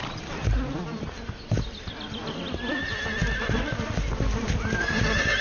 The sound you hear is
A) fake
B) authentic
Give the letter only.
B